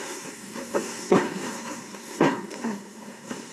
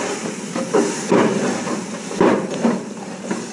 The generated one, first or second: first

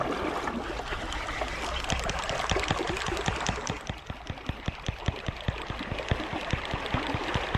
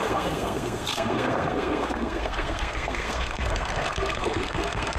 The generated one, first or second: second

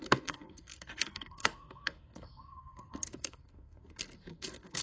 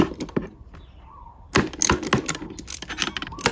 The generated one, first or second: first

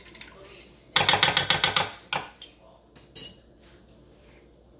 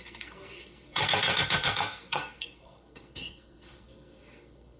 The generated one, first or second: second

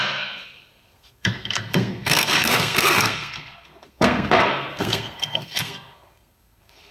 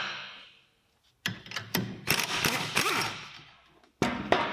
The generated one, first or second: first